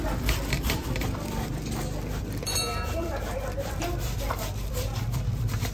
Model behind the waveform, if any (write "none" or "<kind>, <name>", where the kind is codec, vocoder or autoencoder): vocoder, BigVGAN v2